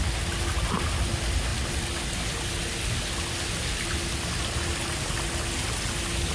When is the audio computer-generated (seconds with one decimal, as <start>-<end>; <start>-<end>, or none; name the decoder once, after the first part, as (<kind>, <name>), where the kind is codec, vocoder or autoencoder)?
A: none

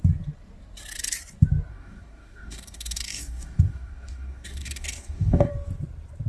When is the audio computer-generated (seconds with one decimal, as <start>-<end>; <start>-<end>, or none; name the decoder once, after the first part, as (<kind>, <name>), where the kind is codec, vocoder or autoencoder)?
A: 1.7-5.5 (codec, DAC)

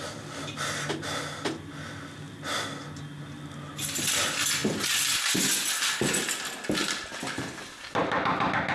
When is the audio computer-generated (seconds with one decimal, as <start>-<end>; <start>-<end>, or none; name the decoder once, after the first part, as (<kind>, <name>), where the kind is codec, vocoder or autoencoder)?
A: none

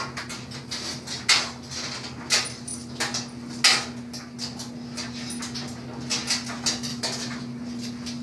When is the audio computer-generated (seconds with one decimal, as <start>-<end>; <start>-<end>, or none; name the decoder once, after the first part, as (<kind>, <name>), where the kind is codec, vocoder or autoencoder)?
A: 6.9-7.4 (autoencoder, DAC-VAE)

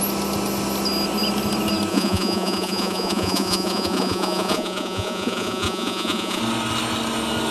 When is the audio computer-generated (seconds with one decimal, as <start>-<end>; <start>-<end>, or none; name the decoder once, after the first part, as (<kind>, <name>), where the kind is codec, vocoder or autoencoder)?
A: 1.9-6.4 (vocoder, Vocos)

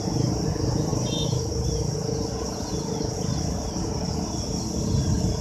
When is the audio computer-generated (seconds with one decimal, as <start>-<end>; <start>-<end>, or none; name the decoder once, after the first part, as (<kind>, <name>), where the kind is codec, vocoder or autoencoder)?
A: none

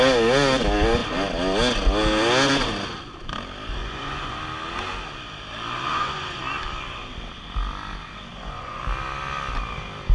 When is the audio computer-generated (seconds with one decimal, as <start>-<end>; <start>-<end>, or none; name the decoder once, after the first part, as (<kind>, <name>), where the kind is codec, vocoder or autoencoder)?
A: 3.8-4.4 (vocoder, Vocos); 5.9-6.4; 8.3-8.8

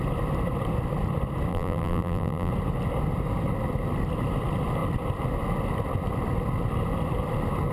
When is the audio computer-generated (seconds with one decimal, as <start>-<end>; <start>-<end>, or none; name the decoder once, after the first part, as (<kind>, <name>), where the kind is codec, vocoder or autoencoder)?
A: 1.5-2.5 (vocoder, BigVGAN v2)